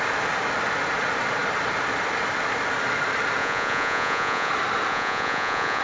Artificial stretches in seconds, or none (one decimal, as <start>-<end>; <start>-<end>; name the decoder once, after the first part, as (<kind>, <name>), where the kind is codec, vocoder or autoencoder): 3.4-4.5 (vocoder, Vocos); 4.9-5.8